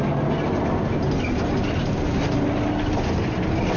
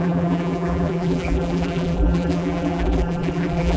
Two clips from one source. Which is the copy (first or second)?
second